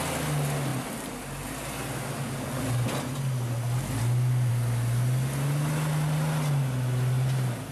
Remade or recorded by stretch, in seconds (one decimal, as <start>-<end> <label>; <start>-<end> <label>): 0.0-7.7 recorded